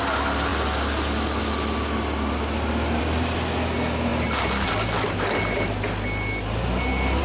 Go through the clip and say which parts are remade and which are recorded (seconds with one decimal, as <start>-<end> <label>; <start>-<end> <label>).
0.0-7.2 recorded